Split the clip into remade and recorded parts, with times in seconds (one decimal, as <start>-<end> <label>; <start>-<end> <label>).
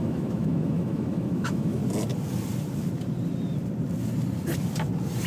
0.0-1.8 remade; 1.8-5.3 recorded